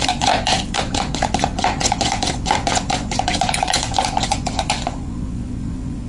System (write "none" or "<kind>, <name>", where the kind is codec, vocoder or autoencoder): vocoder, Vocos